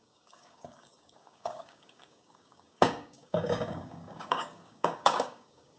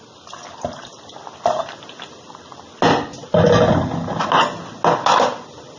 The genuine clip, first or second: second